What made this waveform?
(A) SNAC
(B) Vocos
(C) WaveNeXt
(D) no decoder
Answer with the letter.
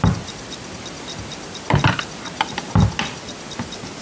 D